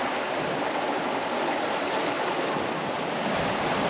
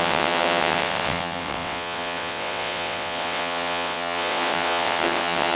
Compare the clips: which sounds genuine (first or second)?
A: first